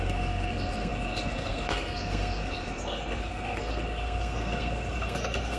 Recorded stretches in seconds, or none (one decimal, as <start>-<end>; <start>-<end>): none